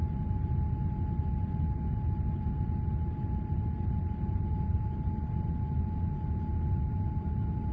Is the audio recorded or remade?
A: recorded